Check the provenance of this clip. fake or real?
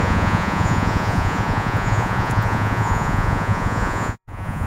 fake